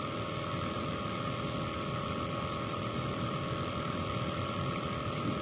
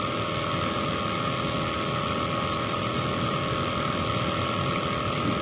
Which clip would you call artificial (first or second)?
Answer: first